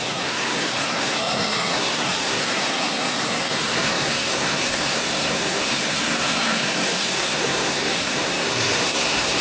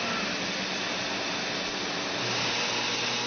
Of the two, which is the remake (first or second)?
first